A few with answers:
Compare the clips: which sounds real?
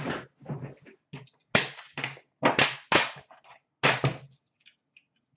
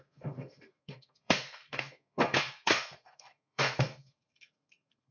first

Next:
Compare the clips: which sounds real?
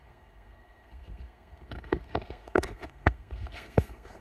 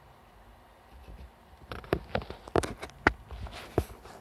second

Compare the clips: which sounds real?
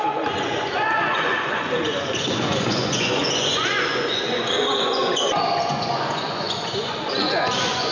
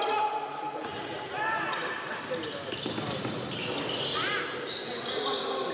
second